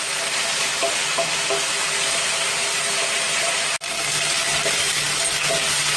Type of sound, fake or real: real